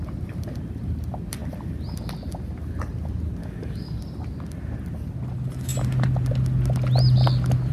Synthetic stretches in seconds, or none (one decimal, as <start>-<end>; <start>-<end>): 3.4-4.0